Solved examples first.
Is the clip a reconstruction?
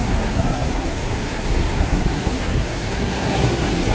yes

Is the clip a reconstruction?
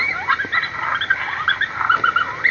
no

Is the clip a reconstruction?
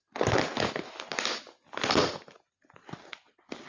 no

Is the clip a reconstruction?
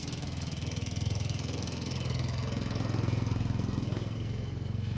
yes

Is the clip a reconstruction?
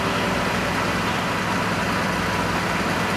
no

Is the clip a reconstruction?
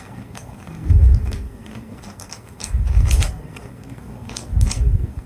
yes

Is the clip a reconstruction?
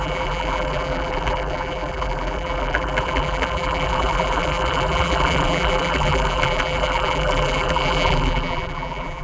yes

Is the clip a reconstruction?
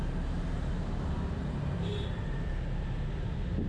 no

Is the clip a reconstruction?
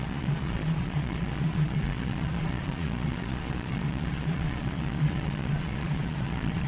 yes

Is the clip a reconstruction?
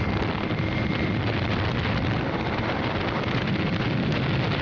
yes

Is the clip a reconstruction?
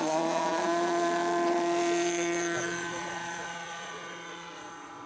yes